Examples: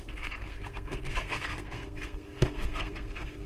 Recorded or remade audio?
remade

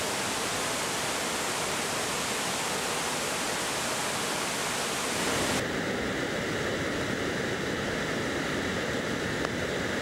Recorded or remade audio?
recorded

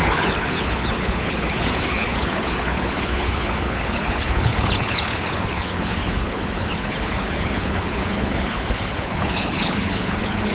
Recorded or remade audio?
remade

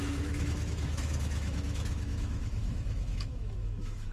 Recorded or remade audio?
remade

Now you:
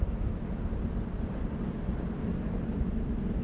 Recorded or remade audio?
recorded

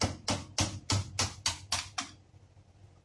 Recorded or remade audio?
recorded